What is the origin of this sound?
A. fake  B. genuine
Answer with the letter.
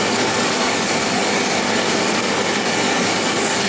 A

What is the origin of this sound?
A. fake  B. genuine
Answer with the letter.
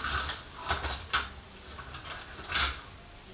B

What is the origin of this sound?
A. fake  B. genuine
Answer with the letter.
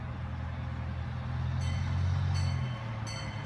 B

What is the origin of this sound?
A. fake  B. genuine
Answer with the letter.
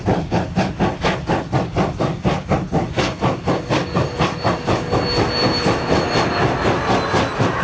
B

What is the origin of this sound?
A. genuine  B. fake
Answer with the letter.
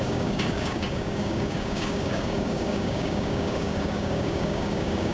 B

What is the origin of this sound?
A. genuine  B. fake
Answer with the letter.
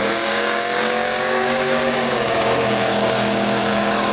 B